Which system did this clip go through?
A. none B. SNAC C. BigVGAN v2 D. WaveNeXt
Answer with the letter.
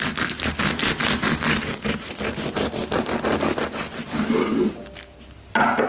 A